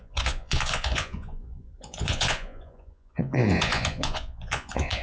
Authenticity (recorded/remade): remade